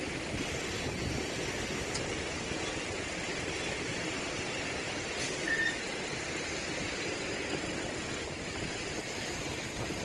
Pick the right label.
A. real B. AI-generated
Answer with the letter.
A